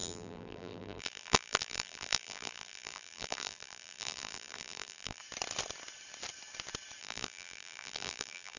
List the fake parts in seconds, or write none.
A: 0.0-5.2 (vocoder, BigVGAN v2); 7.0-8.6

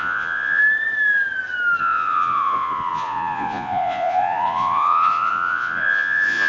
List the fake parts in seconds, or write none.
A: 0.0-0.6 (vocoder, Vocos); 1.8-6.5